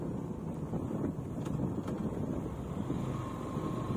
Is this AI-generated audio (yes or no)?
no